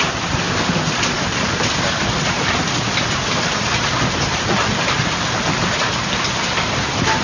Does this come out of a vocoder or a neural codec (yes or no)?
no